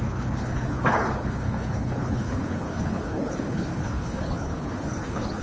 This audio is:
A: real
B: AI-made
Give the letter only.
B